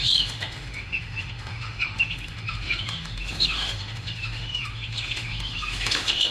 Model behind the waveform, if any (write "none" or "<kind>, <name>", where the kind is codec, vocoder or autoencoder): autoencoder, DAC-VAE